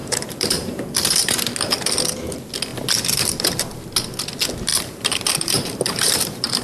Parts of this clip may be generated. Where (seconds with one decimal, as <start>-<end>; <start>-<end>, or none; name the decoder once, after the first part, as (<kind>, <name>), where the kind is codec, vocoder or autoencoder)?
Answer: 0.0-0.9 (vocoder, BigVGAN v2); 4.7-6.6